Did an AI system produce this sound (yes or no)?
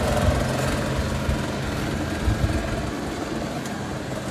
no